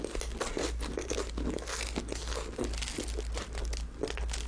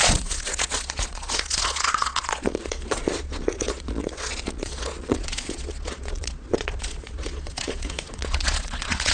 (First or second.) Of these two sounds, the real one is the first